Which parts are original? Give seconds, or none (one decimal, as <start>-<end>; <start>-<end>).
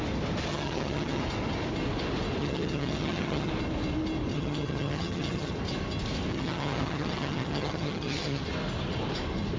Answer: 0.0-0.5; 1.2-2.4; 3.5-4.3; 5.5-6.3; 8.4-9.6